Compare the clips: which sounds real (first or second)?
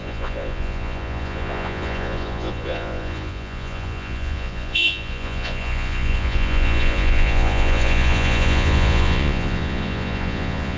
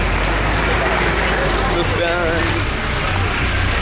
second